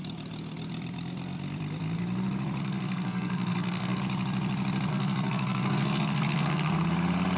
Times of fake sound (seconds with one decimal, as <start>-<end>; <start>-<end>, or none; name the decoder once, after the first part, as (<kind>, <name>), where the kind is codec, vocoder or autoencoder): 2.6-4.0 (codec, SNAC); 4.9-6.7